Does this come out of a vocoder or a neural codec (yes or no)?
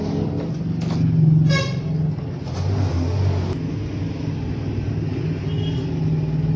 no